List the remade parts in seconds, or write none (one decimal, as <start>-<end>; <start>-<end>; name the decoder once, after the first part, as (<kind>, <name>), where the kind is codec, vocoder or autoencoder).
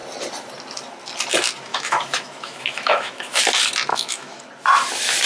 1.7-3.4 (autoencoder, DAC-VAE); 3.9-4.4